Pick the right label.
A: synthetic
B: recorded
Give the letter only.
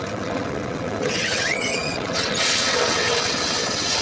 A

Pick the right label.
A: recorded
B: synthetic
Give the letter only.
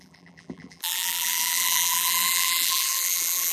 B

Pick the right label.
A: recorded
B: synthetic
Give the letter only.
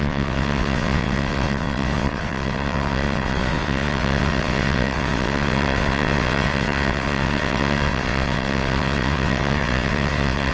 B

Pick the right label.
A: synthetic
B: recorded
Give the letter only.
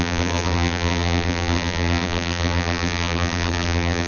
A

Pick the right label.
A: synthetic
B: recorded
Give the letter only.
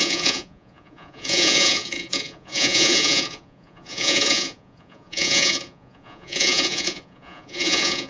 A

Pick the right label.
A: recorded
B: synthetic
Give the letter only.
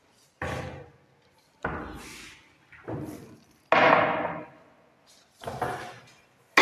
A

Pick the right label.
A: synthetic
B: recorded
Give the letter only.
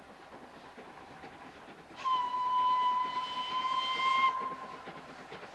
B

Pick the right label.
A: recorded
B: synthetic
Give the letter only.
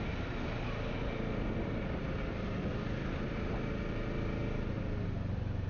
A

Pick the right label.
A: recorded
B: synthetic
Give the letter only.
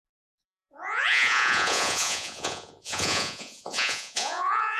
B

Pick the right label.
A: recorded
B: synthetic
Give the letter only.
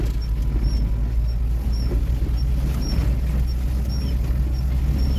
A